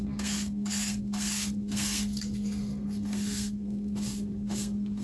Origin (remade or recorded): remade